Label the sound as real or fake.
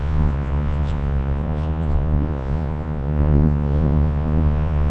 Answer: fake